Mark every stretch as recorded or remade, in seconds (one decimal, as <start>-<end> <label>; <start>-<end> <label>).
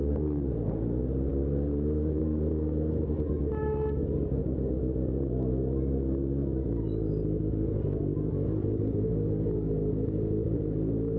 0.0-11.2 recorded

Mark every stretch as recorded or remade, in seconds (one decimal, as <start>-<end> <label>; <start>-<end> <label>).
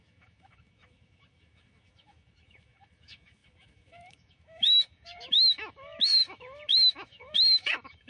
0.0-8.1 remade